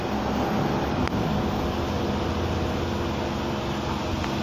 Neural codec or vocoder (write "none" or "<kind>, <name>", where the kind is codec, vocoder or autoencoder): none